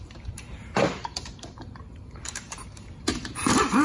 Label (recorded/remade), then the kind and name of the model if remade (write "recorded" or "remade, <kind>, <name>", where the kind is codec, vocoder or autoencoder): remade, vocoder, BigVGAN v2